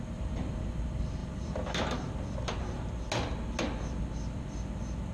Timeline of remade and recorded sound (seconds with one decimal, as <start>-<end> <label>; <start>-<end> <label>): 0.0-5.1 recorded